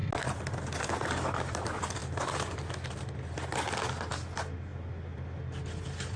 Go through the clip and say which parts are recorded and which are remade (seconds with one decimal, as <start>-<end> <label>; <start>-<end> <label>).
0.0-6.2 recorded